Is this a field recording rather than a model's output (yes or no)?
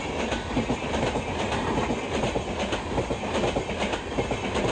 yes